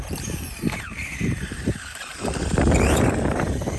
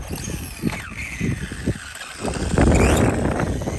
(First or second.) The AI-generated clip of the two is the first